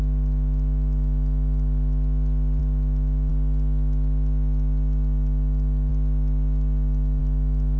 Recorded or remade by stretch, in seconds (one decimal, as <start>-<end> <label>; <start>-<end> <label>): 0.0-7.8 recorded